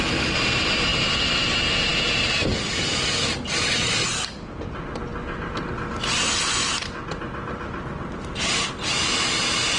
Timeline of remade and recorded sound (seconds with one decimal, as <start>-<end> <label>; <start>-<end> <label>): 0.0-9.8 recorded